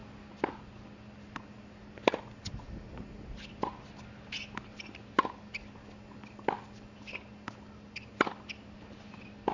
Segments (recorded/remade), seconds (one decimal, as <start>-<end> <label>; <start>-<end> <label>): 0.0-9.5 recorded